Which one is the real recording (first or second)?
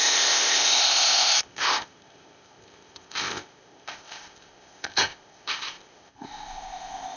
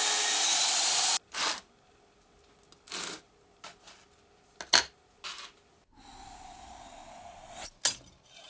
second